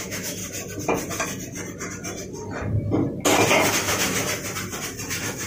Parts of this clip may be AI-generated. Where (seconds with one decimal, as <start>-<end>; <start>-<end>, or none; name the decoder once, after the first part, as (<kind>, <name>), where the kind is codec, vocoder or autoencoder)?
0.0-0.4 (autoencoder, DAC-VAE); 3.7-4.2; 5.1-5.5